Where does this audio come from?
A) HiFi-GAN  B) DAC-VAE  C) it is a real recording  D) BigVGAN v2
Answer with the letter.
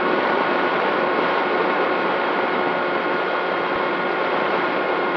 D